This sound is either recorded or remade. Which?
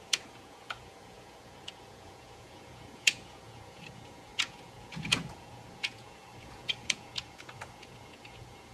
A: remade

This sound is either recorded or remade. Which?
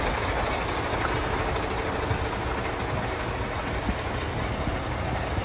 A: recorded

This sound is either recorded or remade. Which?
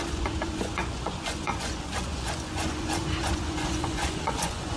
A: remade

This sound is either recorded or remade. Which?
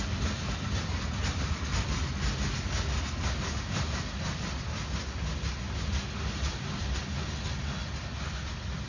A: recorded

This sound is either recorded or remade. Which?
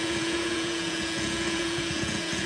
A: remade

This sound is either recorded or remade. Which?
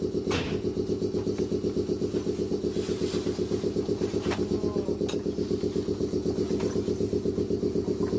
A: recorded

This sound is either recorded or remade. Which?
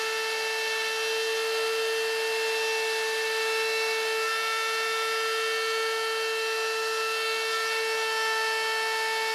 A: recorded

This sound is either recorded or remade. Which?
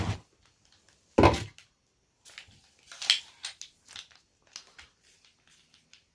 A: recorded